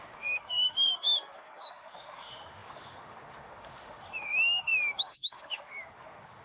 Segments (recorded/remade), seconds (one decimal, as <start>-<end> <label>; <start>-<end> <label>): 0.0-6.4 remade